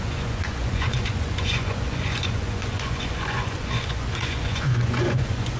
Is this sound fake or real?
fake